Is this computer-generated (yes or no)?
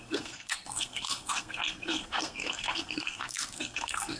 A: yes